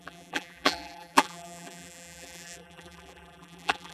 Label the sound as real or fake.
fake